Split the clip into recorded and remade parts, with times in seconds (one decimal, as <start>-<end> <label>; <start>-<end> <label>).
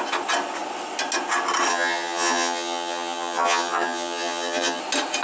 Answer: 0.0-1.7 recorded; 1.7-4.8 remade; 4.8-5.2 recorded